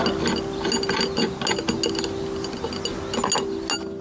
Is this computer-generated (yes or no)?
no